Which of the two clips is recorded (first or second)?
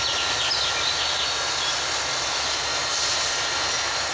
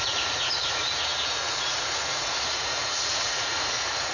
first